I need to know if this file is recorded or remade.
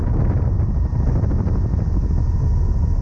recorded